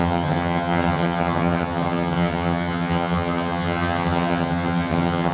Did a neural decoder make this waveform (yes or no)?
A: yes